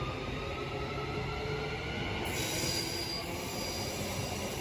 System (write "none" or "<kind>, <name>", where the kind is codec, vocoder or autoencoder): none